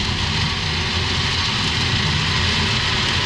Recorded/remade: recorded